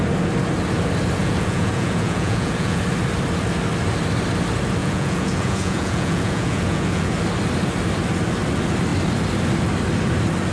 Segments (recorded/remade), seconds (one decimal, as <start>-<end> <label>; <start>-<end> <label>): 0.0-1.2 recorded; 1.2-2.8 remade; 2.8-4.8 recorded; 4.8-7.1 remade; 7.1-10.5 recorded